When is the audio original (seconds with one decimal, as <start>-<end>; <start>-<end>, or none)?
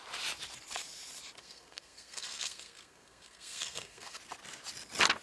0.0-1.4; 4.2-5.2